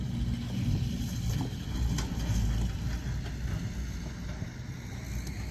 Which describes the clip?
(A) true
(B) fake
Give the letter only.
A